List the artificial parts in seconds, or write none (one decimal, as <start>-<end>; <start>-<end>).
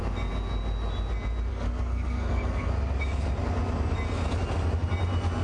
1.5-2.7